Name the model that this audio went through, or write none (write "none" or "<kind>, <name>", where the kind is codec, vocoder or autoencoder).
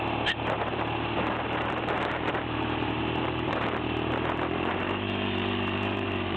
vocoder, BigVGAN v2